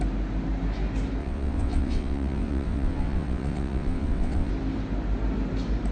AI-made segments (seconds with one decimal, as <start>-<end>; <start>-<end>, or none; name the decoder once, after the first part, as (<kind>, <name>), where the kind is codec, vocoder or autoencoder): 1.2-4.5 (vocoder, WaveNeXt)